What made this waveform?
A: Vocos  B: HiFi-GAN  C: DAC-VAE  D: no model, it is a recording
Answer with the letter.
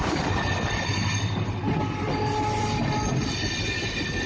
D